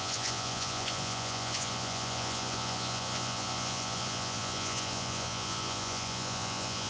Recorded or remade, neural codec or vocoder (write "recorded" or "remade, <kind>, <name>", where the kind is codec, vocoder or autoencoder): remade, vocoder, Vocos